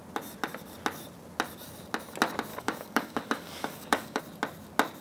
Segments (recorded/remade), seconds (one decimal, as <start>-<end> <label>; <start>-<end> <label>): 0.0-2.5 recorded; 2.5-4.2 remade; 4.2-5.0 recorded